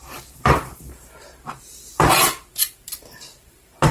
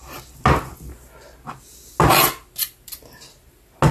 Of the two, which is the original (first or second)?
second